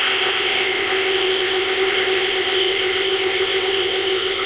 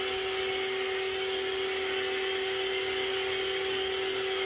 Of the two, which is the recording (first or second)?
second